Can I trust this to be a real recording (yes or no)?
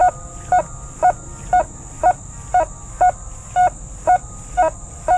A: yes